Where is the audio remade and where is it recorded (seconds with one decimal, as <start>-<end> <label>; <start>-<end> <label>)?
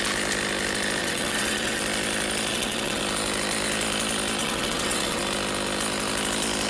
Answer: 0.0-1.0 recorded; 1.0-1.8 remade; 1.8-2.5 recorded; 2.5-3.0 remade; 3.0-4.4 recorded; 4.4-5.2 remade; 5.2-6.7 recorded